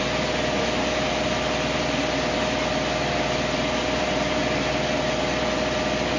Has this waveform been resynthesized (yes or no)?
no